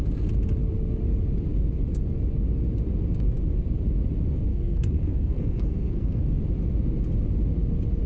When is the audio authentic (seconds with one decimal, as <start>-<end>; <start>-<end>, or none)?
0.0-4.5; 6.4-8.1

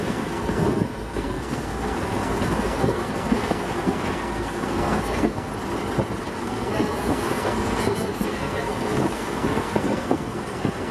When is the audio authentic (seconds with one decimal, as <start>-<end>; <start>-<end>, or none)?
5.5-6.2

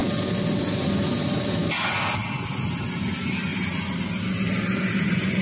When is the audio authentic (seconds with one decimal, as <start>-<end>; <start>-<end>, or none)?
0.0-5.4